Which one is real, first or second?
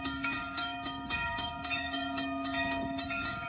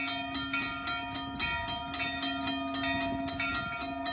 second